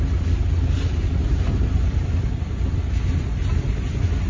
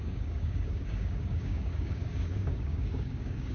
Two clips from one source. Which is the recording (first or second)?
first